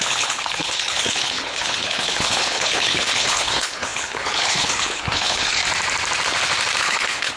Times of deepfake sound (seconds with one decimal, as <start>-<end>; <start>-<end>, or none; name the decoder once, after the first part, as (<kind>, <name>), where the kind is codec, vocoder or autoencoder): 0.0-5.6 (codec, HILCodec); 6.8-7.4